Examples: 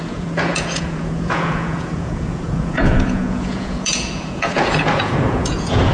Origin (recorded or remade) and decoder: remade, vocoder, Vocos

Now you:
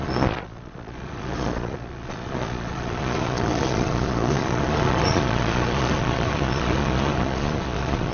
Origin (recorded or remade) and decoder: remade, vocoder, Vocos